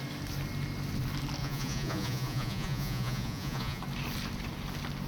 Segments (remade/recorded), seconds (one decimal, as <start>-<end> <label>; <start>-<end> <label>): 0.0-1.4 recorded; 1.4-3.8 remade; 3.8-5.1 recorded